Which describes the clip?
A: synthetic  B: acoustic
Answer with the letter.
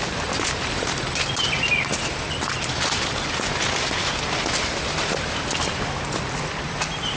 B